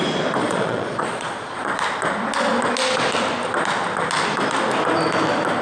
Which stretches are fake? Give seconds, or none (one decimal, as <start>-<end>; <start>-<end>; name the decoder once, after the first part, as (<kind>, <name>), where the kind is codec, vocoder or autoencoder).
0.4-1.7 (vocoder, Vocos)